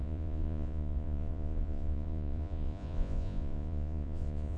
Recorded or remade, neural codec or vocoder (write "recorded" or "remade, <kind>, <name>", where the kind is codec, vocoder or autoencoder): remade, vocoder, Vocos